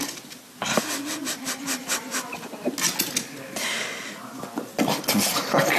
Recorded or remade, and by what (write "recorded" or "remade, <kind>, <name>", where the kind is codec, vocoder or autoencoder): recorded